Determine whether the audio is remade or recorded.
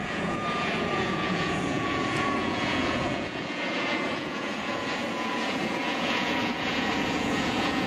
remade